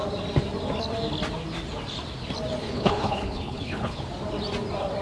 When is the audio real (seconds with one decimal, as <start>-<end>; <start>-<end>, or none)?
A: 0.0-2.6; 4.0-5.0